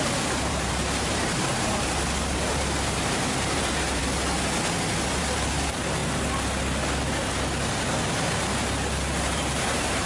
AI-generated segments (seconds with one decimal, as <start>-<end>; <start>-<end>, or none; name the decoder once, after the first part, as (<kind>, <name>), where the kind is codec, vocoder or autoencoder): 0.0-4.0 (vocoder, BigVGAN v2); 5.1-6.0; 9.2-10.1

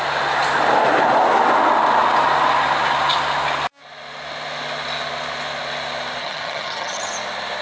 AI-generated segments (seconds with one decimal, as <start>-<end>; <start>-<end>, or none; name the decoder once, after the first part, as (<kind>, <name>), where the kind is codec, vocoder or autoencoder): 6.2-7.1 (vocoder, HiFi-GAN)

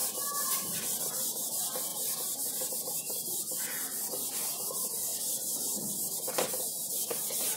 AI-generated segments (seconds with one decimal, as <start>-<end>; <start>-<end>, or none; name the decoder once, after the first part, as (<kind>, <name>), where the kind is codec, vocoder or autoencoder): 1.0-3.4 (vocoder, BigVGAN v2); 4.3-7.6

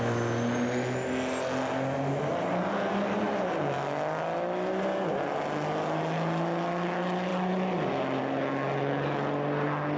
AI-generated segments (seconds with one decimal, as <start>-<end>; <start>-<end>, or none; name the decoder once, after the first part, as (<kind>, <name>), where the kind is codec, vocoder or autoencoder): none

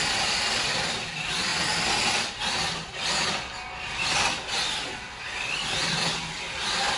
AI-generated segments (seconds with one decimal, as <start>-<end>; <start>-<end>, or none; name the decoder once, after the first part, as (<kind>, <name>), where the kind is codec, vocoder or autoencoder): none

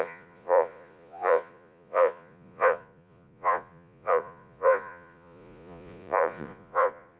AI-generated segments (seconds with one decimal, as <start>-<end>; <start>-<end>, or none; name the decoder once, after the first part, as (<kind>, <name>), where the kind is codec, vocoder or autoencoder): 0.0-7.2 (vocoder, Vocos)

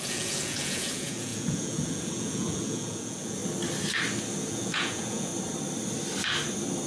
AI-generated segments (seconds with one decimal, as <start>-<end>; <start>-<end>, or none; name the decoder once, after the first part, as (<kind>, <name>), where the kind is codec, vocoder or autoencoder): 0.0-3.4 (vocoder, Vocos); 4.4-5.3